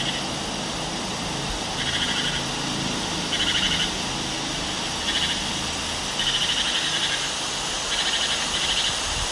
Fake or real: real